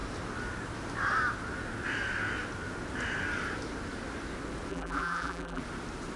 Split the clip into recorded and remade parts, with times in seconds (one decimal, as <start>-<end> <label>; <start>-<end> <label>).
0.0-4.7 recorded; 4.7-5.6 remade; 5.6-6.2 recorded